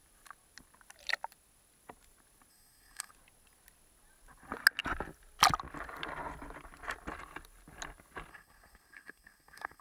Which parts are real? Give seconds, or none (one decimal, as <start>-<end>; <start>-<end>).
0.0-2.5; 3.1-8.3